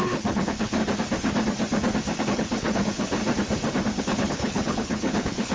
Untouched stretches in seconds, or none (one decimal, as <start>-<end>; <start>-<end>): 0.8-2.2; 3.2-4.0